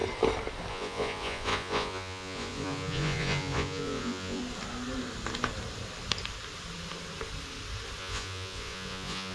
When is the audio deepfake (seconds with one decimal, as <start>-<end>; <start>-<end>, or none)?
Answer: 0.7-4.4; 8.0-9.3